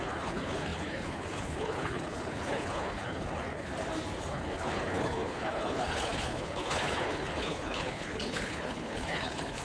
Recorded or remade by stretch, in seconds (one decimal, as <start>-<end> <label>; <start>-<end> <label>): 0.0-3.7 remade; 3.7-4.3 recorded; 4.3-9.6 remade